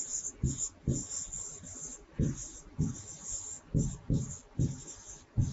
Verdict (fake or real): real